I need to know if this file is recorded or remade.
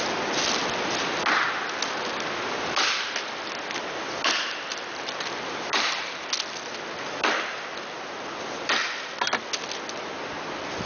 recorded